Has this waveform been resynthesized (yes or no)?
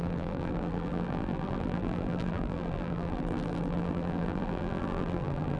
yes